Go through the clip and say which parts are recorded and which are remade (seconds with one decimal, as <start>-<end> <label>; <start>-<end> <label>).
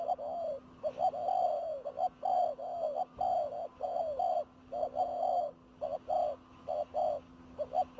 0.0-8.0 recorded